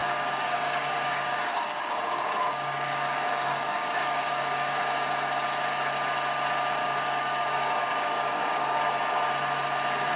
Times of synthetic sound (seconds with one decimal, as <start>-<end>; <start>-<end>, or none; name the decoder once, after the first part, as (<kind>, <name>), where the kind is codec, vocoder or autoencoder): 0.0-4.8 (codec, DAC); 6.8-8.8